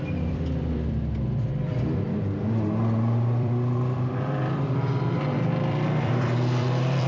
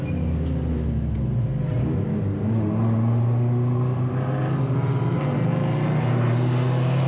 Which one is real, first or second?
second